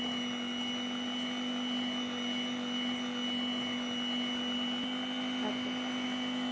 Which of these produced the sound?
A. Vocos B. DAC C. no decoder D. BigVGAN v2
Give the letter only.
C